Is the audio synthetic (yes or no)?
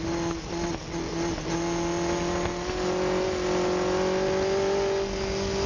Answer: no